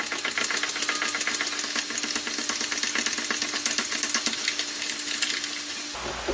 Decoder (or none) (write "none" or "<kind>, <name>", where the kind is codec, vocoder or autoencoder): none